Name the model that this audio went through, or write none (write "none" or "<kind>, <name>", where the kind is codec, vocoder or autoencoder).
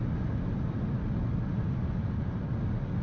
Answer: none